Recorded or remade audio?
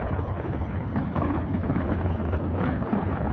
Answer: remade